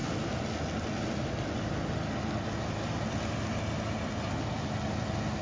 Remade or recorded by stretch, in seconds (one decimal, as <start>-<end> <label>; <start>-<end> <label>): 0.0-5.4 recorded